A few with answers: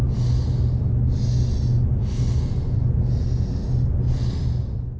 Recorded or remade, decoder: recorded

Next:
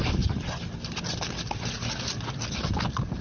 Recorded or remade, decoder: recorded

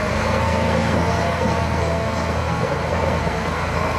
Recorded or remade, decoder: remade, codec, SNAC